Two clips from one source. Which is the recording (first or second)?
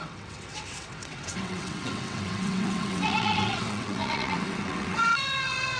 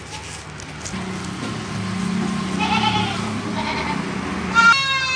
second